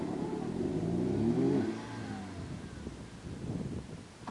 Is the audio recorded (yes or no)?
yes